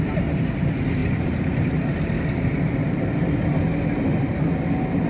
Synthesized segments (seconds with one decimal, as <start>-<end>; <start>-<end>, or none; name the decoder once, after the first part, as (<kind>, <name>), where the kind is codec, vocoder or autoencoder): 0.0-1.0 (vocoder, BigVGAN v2); 2.2-3.7; 4.3-5.1